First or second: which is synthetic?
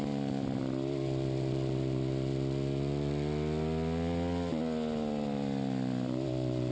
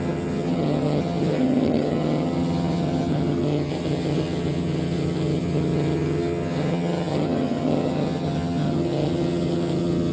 second